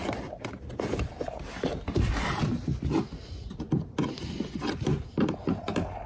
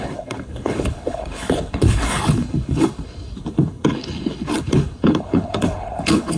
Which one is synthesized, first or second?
second